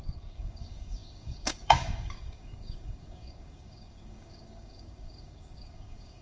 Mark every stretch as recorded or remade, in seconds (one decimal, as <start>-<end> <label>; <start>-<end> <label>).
0.0-6.2 remade